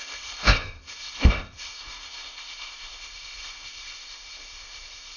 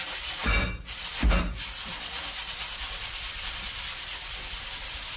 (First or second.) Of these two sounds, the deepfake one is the first